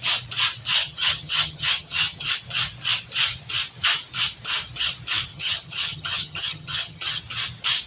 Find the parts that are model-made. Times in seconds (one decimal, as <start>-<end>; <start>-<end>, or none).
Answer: 0.8-2.3; 5.3-7.2